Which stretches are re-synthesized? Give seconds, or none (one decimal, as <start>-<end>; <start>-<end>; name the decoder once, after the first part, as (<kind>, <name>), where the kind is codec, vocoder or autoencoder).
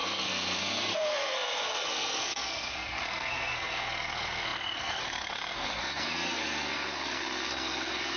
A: 0.0-8.2 (codec, SNAC)